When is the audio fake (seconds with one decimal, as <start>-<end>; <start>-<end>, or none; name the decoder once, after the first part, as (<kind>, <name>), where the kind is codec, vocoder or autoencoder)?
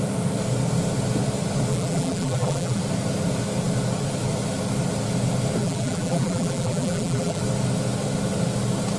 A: 1.7-2.8 (vocoder, BigVGAN v2); 5.6-7.4